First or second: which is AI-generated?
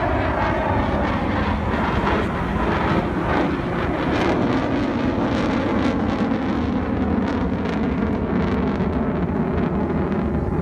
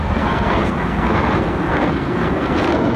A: second